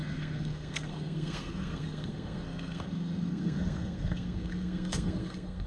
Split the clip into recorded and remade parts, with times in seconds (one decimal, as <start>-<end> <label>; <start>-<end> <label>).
0.0-5.7 remade